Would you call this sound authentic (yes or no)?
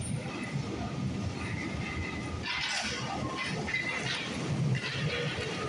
yes